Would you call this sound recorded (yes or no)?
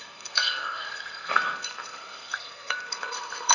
no